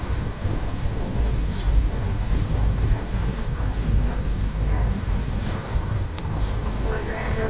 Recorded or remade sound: remade